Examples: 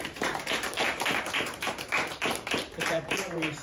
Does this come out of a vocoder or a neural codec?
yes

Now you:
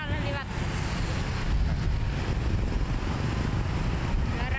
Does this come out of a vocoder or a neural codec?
no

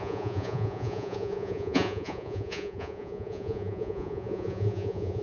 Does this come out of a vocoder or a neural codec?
yes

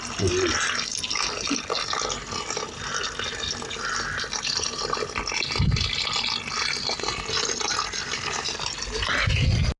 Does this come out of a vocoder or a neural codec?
no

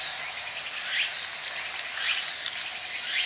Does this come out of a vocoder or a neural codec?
no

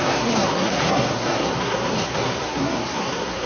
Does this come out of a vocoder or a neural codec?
yes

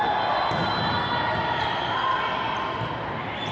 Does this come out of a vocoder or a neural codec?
no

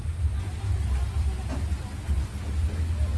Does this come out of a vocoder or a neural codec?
no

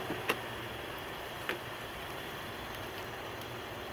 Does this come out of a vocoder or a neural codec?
no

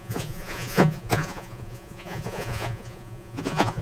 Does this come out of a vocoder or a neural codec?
yes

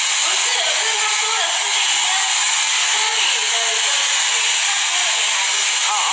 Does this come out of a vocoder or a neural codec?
no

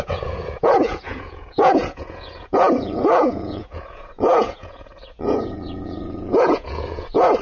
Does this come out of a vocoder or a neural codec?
yes